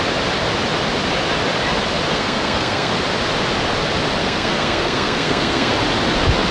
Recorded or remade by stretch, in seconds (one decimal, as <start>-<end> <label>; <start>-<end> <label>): 0.0-2.1 recorded; 2.1-2.9 remade; 2.9-4.2 recorded; 4.2-5.7 remade; 5.7-6.5 recorded